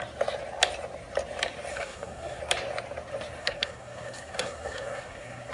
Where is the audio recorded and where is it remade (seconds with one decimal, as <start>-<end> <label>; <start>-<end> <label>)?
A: 0.0-1.7 recorded; 1.7-2.4 remade; 2.4-3.4 recorded; 3.4-5.5 remade